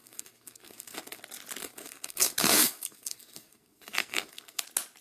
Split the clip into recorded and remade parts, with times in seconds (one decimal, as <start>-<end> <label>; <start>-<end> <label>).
0.0-1.2 remade; 1.2-1.6 recorded; 1.6-4.6 remade; 4.6-5.0 recorded